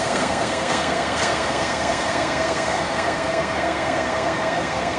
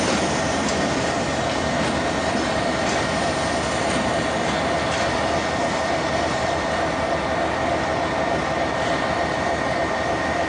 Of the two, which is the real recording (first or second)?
second